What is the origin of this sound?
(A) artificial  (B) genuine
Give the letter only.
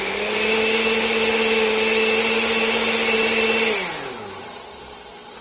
B